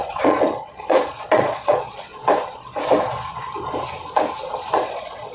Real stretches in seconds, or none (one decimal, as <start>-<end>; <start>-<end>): 2.1-4.7